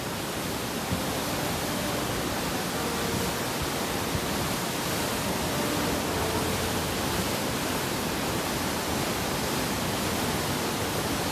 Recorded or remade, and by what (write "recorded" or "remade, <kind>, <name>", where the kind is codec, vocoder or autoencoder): recorded